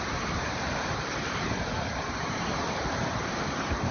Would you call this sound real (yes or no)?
no